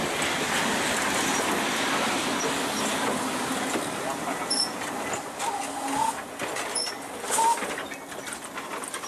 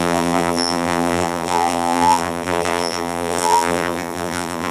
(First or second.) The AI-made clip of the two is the second